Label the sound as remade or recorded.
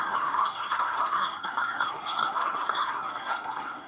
remade